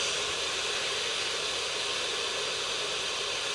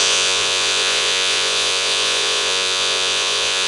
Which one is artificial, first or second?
second